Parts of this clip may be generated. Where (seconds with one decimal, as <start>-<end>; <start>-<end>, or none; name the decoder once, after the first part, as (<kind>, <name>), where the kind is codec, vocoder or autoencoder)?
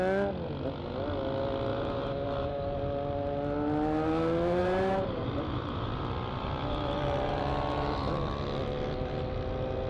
1.7-2.8 (vocoder, BigVGAN v2); 4.6-8.1